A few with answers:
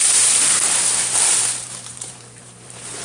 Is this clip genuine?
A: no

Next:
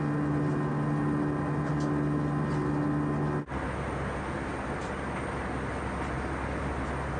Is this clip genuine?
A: yes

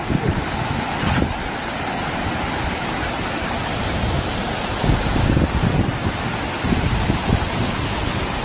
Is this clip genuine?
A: yes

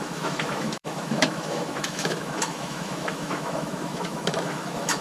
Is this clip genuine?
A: no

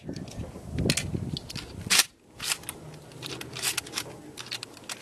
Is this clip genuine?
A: yes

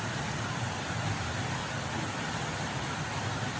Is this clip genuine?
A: yes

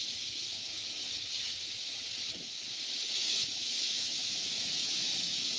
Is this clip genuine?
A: no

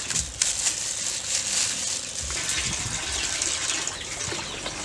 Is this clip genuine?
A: yes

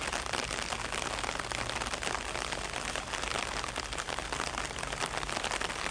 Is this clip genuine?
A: yes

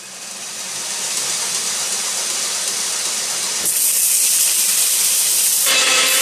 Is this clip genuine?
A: yes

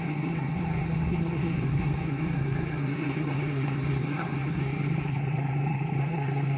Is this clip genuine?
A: no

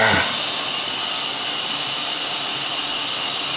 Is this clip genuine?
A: yes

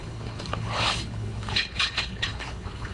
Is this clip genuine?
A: no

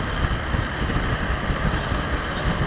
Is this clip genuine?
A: yes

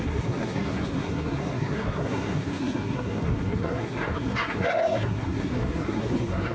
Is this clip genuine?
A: no